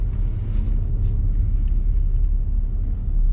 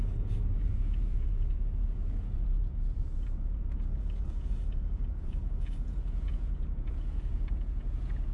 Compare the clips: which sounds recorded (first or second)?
first